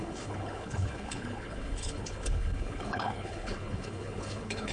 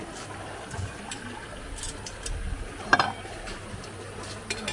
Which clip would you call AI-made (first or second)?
first